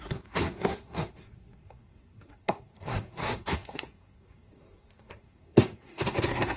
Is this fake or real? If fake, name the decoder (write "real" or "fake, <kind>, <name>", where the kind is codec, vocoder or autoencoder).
fake, codec, SNAC